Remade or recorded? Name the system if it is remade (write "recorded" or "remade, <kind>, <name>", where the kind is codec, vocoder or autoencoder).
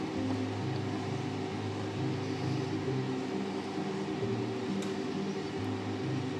recorded